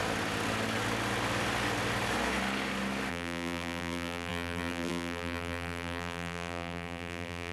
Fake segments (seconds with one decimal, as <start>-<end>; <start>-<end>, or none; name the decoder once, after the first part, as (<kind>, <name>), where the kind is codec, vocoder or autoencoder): 3.1-7.5 (vocoder, BigVGAN v2)